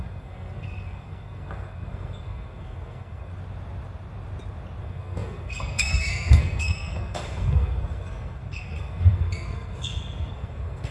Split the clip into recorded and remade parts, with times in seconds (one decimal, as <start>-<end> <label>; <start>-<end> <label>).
0.0-3.3 remade; 3.3-4.8 recorded; 4.8-10.9 remade